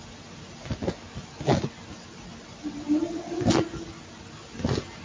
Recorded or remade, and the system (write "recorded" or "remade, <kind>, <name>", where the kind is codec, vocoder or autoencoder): remade, vocoder, BigVGAN v2